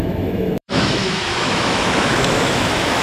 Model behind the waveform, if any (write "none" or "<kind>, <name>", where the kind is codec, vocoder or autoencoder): autoencoder, DAC-VAE